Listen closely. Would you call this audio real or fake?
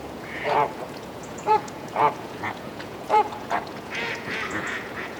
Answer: fake